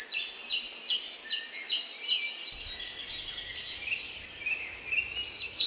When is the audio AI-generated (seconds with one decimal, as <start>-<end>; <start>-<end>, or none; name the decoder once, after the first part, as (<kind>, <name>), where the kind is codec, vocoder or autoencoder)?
none